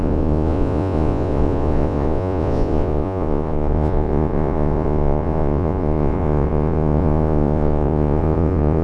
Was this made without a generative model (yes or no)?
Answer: no